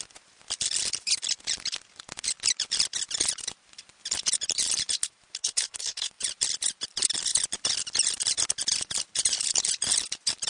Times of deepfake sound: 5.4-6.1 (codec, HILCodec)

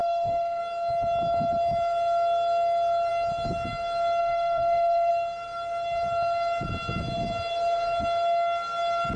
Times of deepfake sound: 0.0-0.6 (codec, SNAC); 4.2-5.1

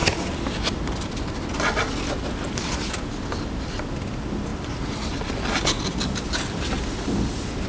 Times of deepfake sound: none

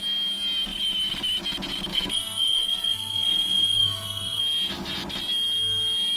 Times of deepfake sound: 1.9-4.4 (codec, SNAC)

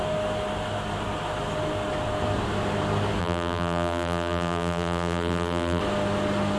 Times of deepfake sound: 3.2-5.8 (vocoder, BigVGAN v2)

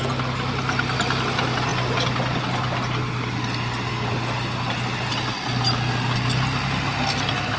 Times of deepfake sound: none

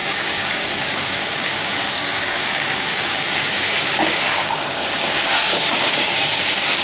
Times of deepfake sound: 0.0-6.8 (codec, DAC)